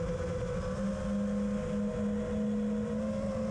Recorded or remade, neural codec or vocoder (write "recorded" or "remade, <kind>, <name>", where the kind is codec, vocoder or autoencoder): recorded